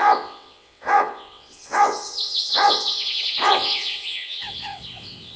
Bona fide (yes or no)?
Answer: no